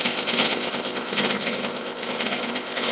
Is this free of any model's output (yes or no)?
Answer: no